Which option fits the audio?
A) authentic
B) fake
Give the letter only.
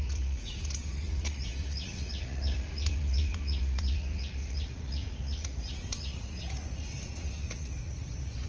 B